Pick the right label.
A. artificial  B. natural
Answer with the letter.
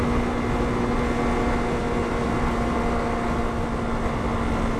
B